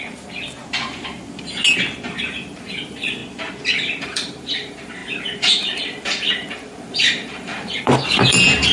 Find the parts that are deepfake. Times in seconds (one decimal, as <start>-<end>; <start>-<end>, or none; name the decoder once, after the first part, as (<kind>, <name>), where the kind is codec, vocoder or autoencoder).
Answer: 0.0-0.6 (vocoder, BigVGAN v2); 2.2-3.2; 4.0-8.7